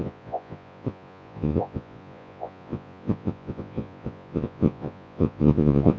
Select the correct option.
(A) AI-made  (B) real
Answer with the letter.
A